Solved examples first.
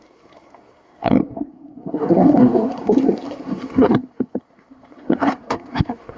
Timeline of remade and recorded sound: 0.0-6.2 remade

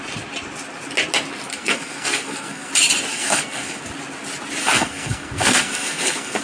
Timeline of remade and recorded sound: 0.0-1.5 recorded; 1.5-2.7 remade; 2.7-3.1 recorded; 3.1-3.8 remade; 3.8-4.6 recorded; 4.6-6.4 remade